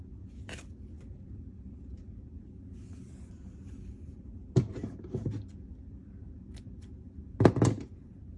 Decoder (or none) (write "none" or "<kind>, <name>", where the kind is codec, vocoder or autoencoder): none